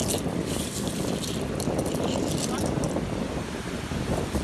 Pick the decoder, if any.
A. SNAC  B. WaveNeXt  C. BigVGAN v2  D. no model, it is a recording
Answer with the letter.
D